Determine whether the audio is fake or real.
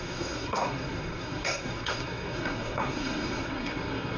fake